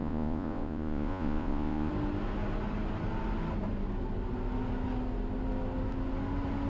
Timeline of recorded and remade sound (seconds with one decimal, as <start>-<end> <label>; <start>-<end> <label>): 0.0-1.9 remade; 1.9-6.7 recorded